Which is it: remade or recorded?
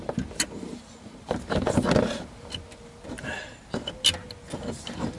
recorded